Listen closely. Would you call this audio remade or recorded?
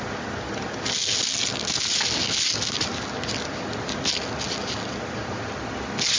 recorded